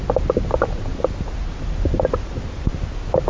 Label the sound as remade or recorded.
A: recorded